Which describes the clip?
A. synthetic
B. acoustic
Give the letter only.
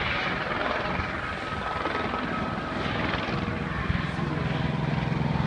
B